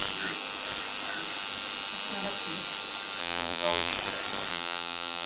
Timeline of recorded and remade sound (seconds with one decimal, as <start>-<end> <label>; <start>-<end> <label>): 0.0-3.2 recorded; 3.2-3.9 remade; 3.9-4.5 recorded; 4.5-5.3 remade

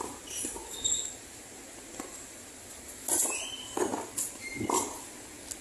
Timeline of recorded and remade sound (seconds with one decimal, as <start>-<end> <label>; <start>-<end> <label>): 0.0-5.6 recorded

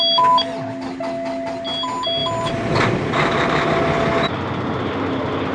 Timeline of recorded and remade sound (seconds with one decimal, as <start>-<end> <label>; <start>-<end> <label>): 0.0-2.2 recorded; 2.2-3.7 remade; 3.7-5.5 recorded

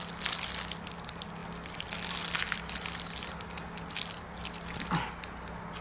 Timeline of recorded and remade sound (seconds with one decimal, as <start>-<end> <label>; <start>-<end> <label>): 0.0-5.8 recorded

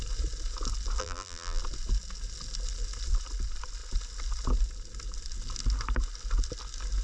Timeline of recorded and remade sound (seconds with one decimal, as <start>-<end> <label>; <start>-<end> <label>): 0.0-1.0 recorded; 1.0-1.6 remade; 1.6-7.0 recorded

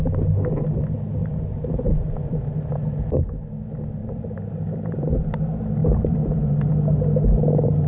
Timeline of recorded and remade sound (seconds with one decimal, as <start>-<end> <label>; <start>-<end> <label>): 0.0-1.2 recorded; 1.2-2.7 remade; 2.7-4.0 recorded; 4.0-5.1 remade; 5.1-5.8 recorded; 5.8-6.7 remade; 6.7-7.9 recorded

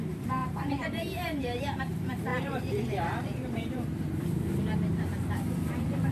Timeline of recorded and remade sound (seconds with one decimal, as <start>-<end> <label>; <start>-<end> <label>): 0.0-0.4 recorded; 0.4-1.8 remade; 1.8-2.3 recorded; 2.3-6.1 remade